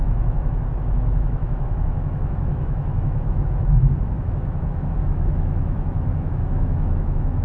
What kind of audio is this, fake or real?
fake